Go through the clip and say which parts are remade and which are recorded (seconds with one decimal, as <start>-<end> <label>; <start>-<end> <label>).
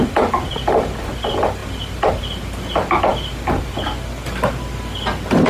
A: 0.0-1.6 recorded; 1.6-2.1 remade; 2.1-5.5 recorded